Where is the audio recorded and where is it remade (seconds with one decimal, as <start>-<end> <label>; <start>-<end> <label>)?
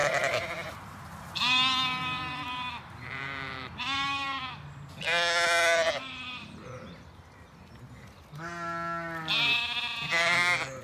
0.0-4.5 remade; 4.5-10.8 recorded